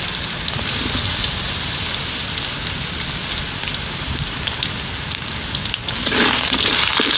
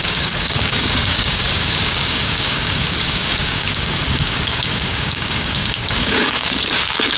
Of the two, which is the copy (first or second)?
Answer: second